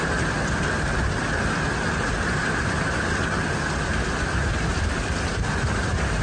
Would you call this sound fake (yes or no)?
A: no